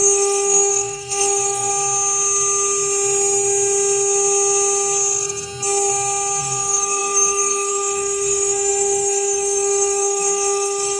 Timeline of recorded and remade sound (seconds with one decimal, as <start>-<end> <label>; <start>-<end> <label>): 0.0-1.7 remade; 1.7-6.4 recorded; 6.4-11.0 remade